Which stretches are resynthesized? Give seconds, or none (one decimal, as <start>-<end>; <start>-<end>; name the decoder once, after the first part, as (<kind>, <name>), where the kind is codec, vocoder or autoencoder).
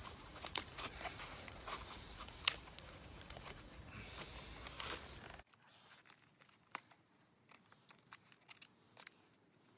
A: 0.0-4.3 (vocoder, Vocos); 9.2-9.8